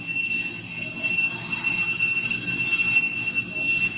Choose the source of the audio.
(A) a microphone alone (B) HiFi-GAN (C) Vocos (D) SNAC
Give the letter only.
A